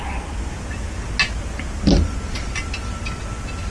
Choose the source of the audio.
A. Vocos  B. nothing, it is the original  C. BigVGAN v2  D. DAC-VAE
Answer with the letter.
B